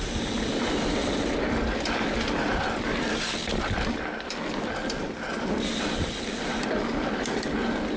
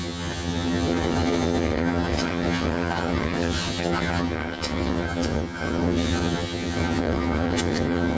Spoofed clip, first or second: second